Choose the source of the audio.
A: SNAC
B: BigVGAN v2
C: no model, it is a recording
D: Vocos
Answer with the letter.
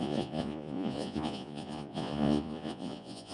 D